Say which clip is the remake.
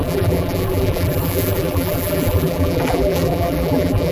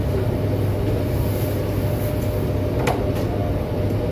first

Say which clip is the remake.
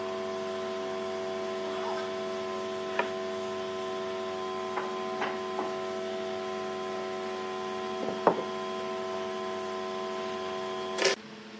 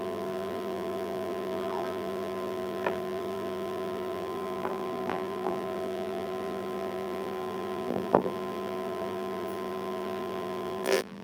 second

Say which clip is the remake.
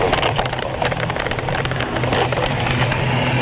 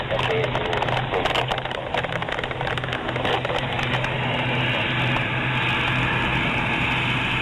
first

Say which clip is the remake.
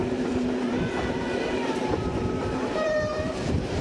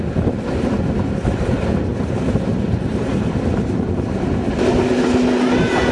first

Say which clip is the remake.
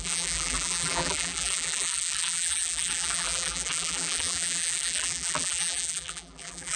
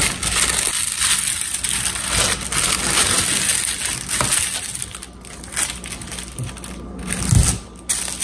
first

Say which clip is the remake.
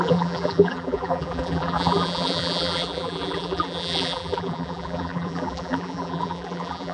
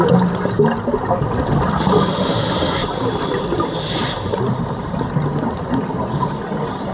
first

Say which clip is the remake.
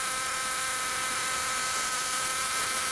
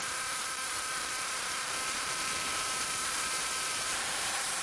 second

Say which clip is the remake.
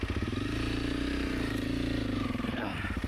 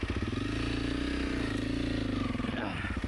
first